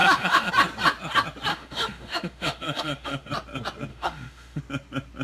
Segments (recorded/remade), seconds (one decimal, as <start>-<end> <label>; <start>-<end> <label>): 0.0-0.5 remade; 0.5-1.5 recorded; 1.5-3.3 remade; 3.3-3.9 recorded; 3.9-4.6 remade; 4.6-5.2 recorded